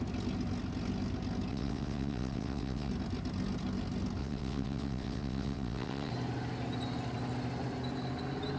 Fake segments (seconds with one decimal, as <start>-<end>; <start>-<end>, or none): 1.5-2.9; 4.2-6.1